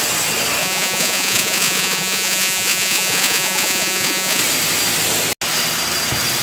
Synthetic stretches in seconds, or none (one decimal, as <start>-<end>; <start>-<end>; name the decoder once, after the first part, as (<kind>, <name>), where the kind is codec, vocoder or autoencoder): 0.6-4.4 (vocoder, Vocos)